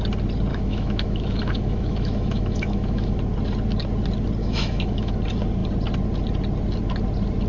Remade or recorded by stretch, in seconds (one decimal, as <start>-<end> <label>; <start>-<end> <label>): 0.0-0.5 recorded; 0.5-3.2 remade; 3.2-4.4 recorded; 4.4-5.1 remade; 5.1-7.5 recorded